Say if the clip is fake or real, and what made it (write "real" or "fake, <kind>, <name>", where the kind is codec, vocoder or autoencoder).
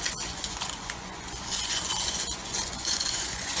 fake, vocoder, Vocos